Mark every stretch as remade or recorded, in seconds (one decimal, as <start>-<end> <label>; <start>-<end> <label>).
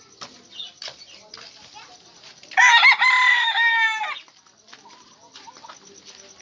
0.0-3.3 recorded; 3.3-4.0 remade; 4.0-6.4 recorded